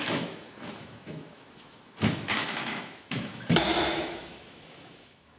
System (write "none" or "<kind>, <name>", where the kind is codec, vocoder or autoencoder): autoencoder, DAC-VAE